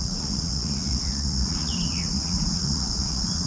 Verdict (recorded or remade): remade